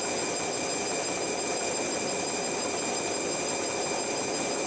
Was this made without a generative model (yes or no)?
yes